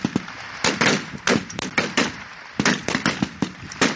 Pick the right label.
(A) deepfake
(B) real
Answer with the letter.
B